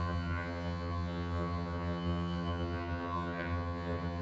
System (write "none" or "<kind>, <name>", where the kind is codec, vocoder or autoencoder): vocoder, HiFi-GAN